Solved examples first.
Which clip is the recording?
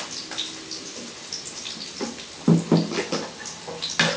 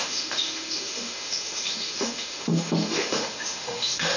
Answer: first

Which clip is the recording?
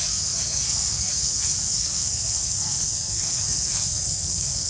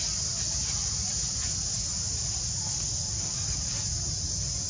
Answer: second